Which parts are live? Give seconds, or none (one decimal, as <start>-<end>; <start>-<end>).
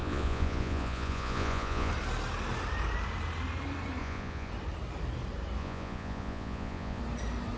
1.9-4.0; 4.5-5.6; 7.0-7.6